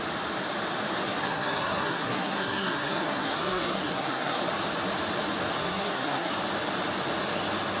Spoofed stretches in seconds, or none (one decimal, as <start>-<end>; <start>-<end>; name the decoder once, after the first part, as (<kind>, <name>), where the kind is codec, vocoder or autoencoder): 1.1-4.4 (codec, SNAC); 5.6-6.3

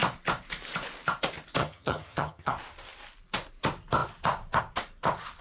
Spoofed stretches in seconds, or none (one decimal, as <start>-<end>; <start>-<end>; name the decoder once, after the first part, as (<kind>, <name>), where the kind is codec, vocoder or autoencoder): 1.6-2.5 (vocoder, HiFi-GAN)

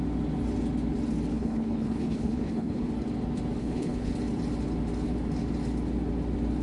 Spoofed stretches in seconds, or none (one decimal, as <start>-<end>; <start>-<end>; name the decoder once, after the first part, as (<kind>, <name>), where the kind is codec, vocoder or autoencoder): 1.3-2.9 (codec, HILCodec); 3.6-4.1

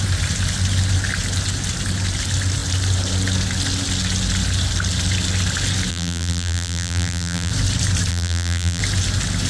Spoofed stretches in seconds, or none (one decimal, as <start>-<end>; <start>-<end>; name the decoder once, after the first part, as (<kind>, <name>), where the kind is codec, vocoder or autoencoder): 5.9-7.5 (vocoder, BigVGAN v2); 8.1-8.8

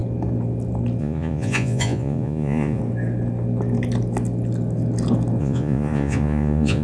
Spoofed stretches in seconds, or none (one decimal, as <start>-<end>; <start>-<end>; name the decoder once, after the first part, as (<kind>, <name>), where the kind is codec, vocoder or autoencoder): 1.0-2.8 (vocoder, Vocos); 5.4-6.8

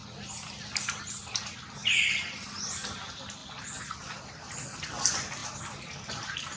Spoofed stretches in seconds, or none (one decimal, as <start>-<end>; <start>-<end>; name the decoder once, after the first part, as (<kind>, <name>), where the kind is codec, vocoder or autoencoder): 1.8-2.6 (vocoder, BigVGAN v2); 5.4-6.6

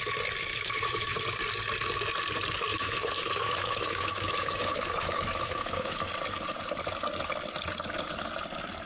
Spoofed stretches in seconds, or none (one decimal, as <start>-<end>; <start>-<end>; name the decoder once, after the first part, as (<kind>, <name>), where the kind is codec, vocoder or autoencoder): 0.5-1.2 (autoencoder, DAC-VAE); 2.7-6.1